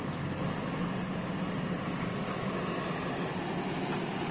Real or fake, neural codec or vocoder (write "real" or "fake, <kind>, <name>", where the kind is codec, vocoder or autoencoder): real